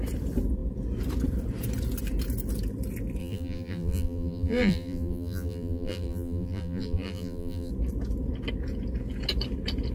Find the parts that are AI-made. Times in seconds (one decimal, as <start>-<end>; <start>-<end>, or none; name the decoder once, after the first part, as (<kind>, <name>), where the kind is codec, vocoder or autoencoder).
3.2-7.7 (vocoder, BigVGAN v2)